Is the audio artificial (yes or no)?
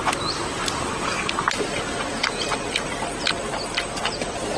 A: no